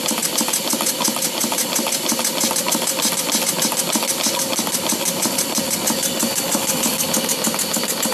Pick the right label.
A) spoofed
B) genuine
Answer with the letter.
B